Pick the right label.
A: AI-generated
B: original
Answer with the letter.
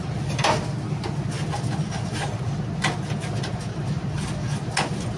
B